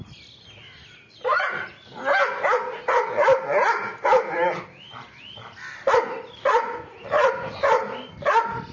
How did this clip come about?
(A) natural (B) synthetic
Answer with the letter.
A